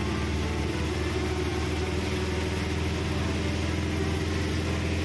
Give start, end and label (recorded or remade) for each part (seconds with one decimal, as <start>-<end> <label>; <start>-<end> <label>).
0.0-5.0 recorded